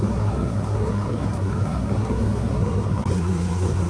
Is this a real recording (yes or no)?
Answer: no